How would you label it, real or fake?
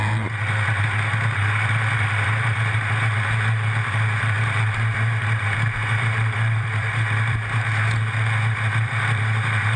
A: fake